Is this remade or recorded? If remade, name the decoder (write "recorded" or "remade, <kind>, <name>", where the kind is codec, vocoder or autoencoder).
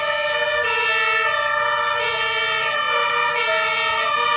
recorded